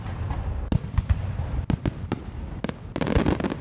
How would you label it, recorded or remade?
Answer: recorded